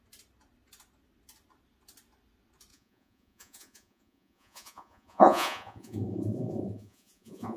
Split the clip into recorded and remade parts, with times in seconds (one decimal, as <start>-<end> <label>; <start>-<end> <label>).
0.0-2.7 recorded; 2.7-7.6 remade